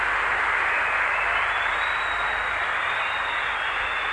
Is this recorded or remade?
recorded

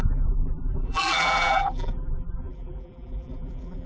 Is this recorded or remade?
remade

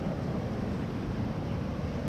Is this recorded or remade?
remade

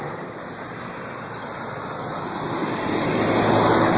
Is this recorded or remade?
recorded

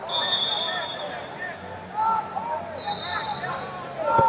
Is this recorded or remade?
recorded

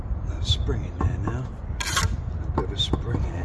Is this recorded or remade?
recorded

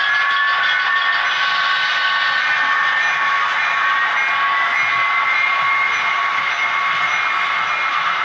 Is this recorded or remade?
recorded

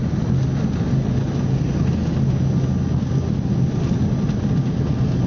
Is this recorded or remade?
recorded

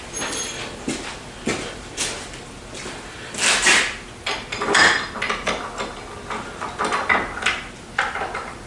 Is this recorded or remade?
recorded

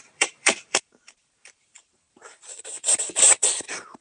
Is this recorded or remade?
remade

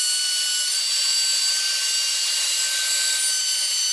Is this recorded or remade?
remade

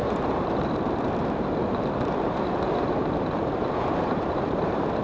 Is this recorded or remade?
remade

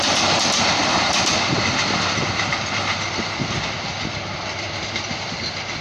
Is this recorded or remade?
recorded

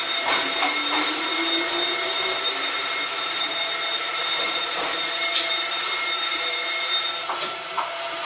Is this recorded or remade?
remade